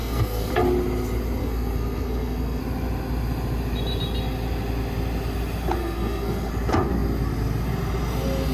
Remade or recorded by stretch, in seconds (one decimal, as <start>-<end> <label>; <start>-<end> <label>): 0.0-0.5 remade; 0.5-1.4 recorded; 1.4-2.6 remade; 2.6-5.8 recorded; 5.8-6.5 remade; 6.5-8.5 recorded